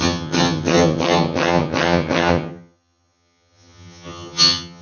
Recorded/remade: remade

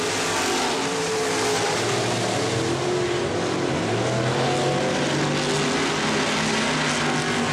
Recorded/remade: recorded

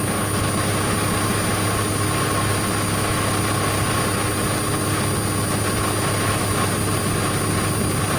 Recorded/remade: recorded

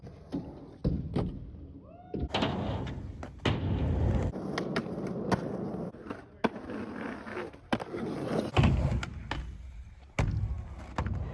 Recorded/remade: recorded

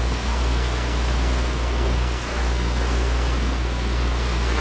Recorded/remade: remade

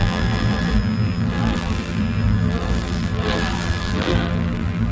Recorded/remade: remade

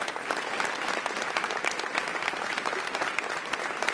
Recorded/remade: remade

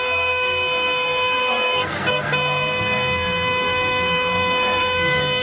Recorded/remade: remade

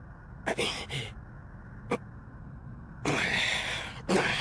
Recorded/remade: recorded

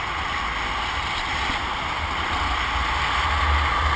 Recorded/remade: recorded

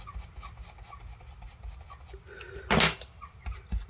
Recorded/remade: recorded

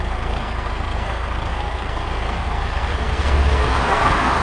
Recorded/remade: remade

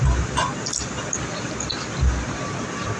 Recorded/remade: recorded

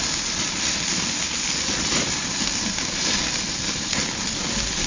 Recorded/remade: recorded